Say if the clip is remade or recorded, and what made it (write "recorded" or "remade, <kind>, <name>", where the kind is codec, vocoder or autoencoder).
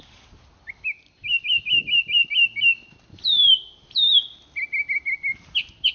recorded